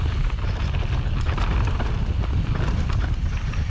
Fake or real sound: real